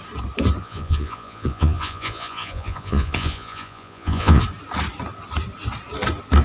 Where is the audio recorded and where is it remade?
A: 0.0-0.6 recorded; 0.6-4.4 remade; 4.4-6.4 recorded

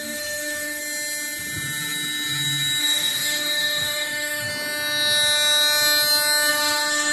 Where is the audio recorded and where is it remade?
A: 0.0-0.8 remade; 0.8-2.8 recorded; 2.8-4.5 remade; 4.5-6.5 recorded; 6.5-7.1 remade

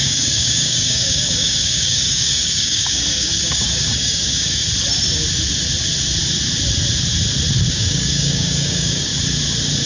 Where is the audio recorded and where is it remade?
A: 0.0-4.6 remade; 4.6-7.7 recorded; 7.7-9.1 remade; 9.1-9.9 recorded

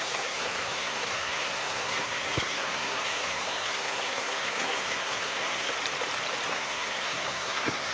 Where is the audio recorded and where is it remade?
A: 0.0-5.7 remade; 5.7-6.5 recorded; 6.5-7.9 remade